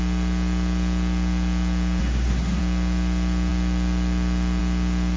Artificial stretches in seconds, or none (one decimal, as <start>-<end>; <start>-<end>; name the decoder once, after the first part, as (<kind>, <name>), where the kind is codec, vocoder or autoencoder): 2.0-2.6 (codec, SNAC)